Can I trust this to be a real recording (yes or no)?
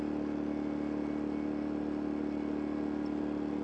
yes